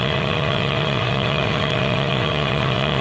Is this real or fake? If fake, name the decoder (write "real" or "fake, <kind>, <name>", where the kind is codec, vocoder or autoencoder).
fake, vocoder, WaveNeXt